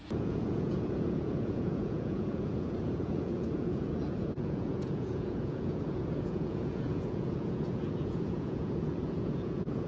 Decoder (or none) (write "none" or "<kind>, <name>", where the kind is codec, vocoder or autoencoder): vocoder, Vocos